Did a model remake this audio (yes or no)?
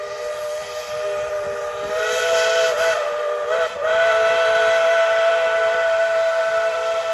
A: yes